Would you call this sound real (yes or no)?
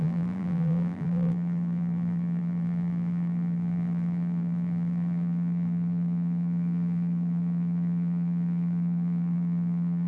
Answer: no